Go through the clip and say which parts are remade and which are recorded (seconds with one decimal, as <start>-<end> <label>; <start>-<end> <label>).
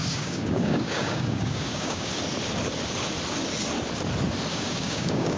0.0-2.1 remade; 2.1-4.5 recorded; 4.5-5.4 remade